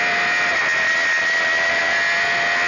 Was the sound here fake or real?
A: real